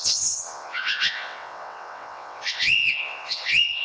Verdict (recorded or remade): remade